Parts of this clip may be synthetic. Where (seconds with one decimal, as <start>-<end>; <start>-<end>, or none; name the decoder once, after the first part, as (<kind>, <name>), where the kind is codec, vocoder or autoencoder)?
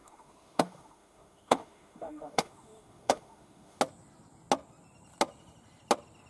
0.0-3.8 (autoencoder, DAC-VAE)